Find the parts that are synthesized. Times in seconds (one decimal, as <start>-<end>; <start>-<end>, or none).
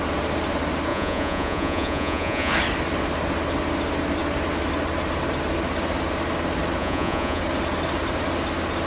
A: 0.9-2.5; 6.8-7.4